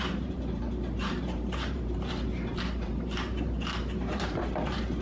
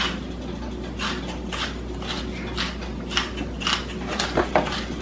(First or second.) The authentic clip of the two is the second